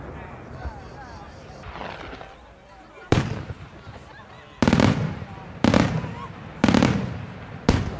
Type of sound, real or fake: real